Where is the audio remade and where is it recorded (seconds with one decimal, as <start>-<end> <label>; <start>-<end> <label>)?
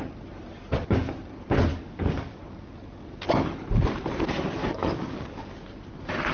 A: 0.0-0.5 recorded; 0.5-1.1 remade; 1.1-1.7 recorded; 1.7-2.4 remade; 2.4-4.6 recorded; 4.6-5.4 remade; 5.4-6.3 recorded